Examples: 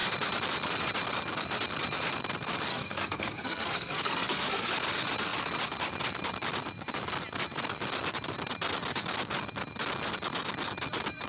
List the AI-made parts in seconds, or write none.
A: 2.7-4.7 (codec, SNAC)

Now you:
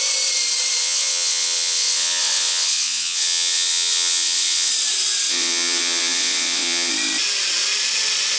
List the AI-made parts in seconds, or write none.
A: 0.8-4.7 (vocoder, WaveNeXt); 5.3-6.9

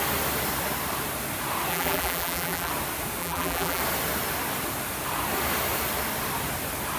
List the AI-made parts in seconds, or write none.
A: 1.7-2.7 (vocoder, BigVGAN v2); 3.2-3.8

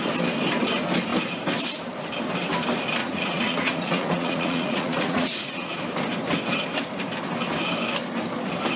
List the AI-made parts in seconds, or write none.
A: 3.0-5.8 (vocoder, Vocos)

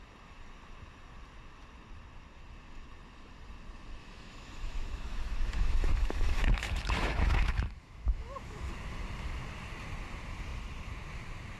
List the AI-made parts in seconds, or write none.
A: 4.0-8.7 (autoencoder, DAC-VAE)

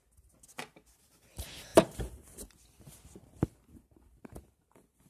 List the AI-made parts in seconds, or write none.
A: none

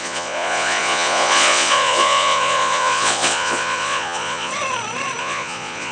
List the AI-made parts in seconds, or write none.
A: 0.0-4.5 (vocoder, Vocos); 5.2-5.9

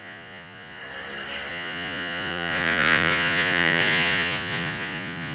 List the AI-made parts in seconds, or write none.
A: 0.0-0.8 (vocoder, Vocos); 1.5-5.3